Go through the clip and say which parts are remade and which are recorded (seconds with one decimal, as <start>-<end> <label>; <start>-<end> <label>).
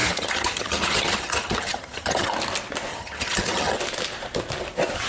0.0-2.3 remade; 2.3-2.9 recorded; 2.9-3.8 remade; 3.8-5.1 recorded